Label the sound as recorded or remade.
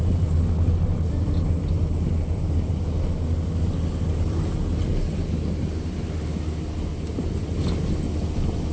recorded